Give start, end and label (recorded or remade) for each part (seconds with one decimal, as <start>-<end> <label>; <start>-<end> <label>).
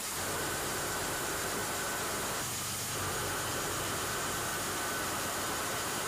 0.0-1.6 remade; 1.6-3.5 recorded; 3.5-4.5 remade; 4.5-5.0 recorded; 5.0-6.1 remade